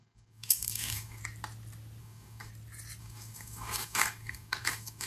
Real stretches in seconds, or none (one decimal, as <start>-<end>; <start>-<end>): 1.2-2.0; 2.5-3.0